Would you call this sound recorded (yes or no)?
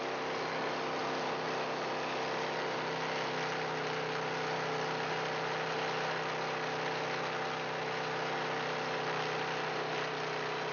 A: yes